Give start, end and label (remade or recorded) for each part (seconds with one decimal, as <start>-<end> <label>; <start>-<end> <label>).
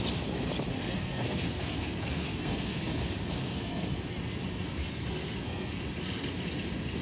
0.0-0.7 recorded; 0.7-2.8 remade; 2.8-3.4 recorded; 3.4-4.0 remade; 4.0-4.8 recorded; 4.8-5.7 remade; 5.7-7.0 recorded